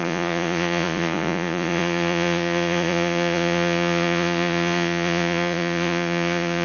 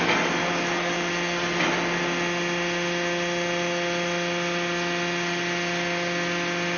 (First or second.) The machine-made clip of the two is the first